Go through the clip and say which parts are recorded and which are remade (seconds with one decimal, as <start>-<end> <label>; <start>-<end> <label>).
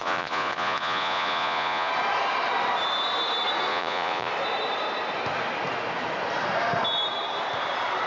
0.0-1.9 remade; 1.9-3.7 recorded; 3.7-4.3 remade; 4.3-8.1 recorded